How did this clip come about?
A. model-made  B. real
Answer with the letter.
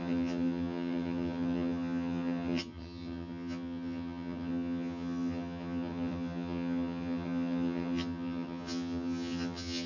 A